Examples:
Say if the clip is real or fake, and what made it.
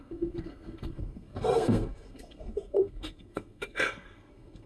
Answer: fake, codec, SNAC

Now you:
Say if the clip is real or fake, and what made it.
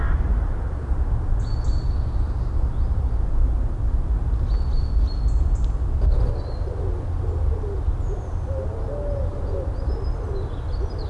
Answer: real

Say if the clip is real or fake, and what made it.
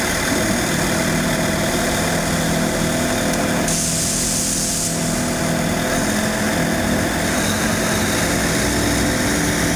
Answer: real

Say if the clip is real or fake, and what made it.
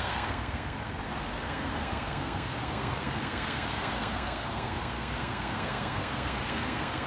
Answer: fake, codec, SNAC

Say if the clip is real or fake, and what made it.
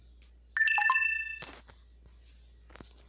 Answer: real